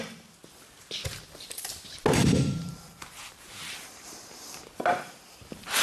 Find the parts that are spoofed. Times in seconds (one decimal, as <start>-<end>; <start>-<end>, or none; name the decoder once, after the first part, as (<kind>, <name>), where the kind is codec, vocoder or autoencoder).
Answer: 2.2-5.1 (vocoder, BigVGAN v2)